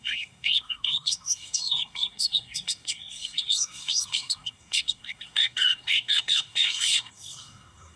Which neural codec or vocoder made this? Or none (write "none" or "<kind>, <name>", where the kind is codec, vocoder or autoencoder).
codec, SNAC